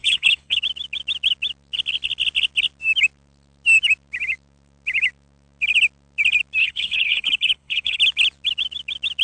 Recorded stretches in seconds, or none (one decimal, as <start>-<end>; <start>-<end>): 0.6-6.6; 8.0-9.2